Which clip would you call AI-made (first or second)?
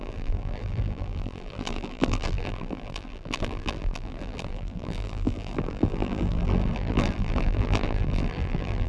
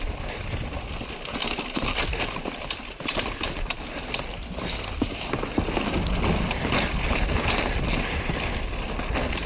first